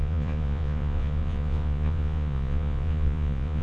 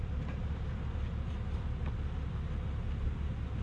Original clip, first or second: second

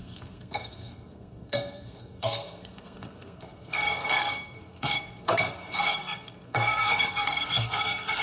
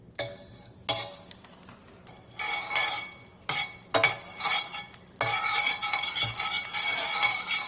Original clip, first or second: second